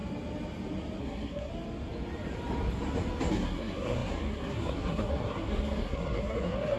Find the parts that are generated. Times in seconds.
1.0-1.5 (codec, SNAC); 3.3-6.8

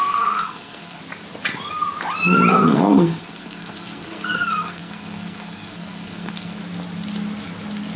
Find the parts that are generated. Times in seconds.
0.0-1.0 (codec, SNAC); 2.5-6.6

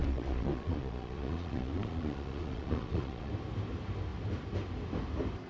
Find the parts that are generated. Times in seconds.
0.0-3.3 (vocoder, Vocos)

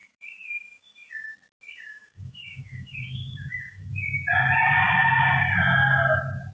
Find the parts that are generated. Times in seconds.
0.0-1.1 (autoencoder, DAC-VAE); 1.9-3.9

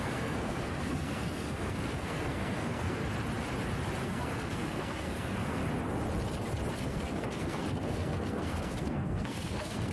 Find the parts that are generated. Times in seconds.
0.0-3.0 (codec, SNAC); 4.0-5.6; 6.7-9.9

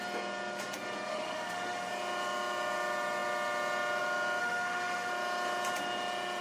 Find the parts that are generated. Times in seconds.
1.1-1.9 (autoencoder, DAC-VAE); 4.4-5.1